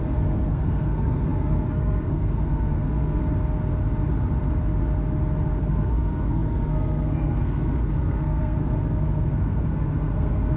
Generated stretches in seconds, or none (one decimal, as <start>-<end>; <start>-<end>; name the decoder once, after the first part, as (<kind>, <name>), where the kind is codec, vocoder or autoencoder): 0.0-3.2 (codec, SNAC); 5.6-10.6